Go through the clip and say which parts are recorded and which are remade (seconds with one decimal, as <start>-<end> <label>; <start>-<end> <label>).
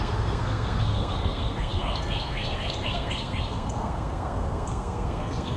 0.0-5.6 remade